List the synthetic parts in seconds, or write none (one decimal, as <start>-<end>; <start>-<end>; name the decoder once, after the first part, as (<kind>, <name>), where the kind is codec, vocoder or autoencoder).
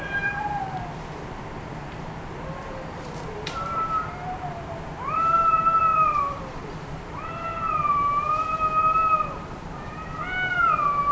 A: 0.0-11.1 (vocoder, BigVGAN v2)